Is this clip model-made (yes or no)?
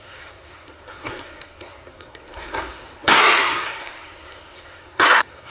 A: yes